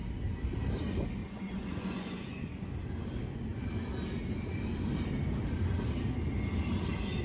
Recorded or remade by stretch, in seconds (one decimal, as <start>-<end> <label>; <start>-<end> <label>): 0.0-1.2 recorded; 1.2-2.7 remade; 2.7-7.2 recorded